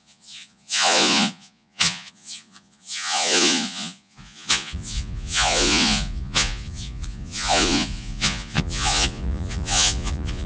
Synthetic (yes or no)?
yes